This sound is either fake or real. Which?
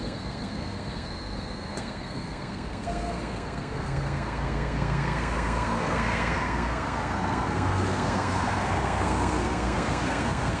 fake